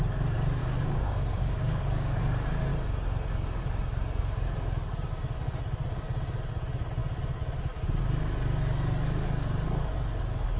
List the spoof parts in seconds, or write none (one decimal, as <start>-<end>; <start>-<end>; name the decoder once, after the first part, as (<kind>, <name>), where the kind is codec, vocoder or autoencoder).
0.6-2.2 (codec, DAC)